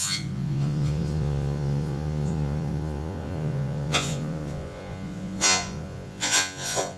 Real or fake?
fake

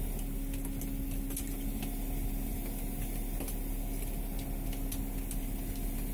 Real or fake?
real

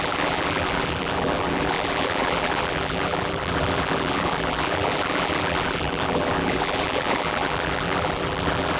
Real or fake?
fake